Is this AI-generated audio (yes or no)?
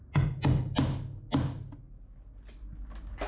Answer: no